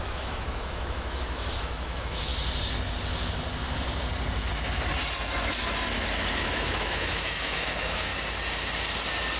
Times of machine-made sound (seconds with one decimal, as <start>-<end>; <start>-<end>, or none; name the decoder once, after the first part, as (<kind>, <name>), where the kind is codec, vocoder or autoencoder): 0.0-2.3 (autoencoder, DAC-VAE); 6.4-8.1